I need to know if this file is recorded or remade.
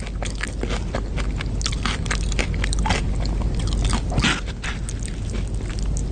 recorded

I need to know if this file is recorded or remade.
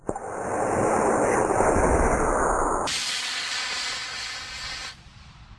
recorded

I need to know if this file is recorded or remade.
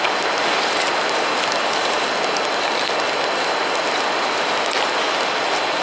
recorded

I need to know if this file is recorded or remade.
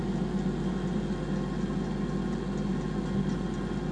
recorded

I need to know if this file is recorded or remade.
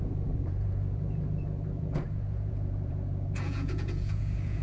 remade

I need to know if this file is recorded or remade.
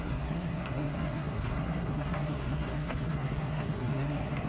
remade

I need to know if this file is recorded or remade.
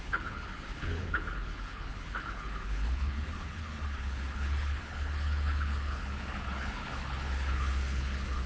remade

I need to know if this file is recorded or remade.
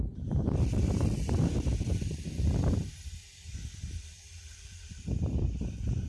remade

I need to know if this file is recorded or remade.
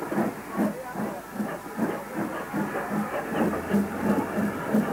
recorded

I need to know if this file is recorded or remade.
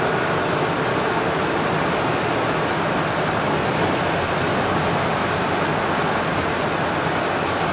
recorded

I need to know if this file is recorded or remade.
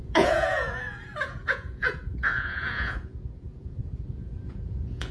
remade